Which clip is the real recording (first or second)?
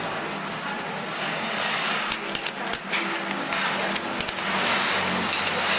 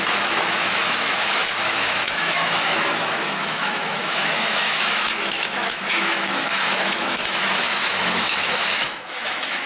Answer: first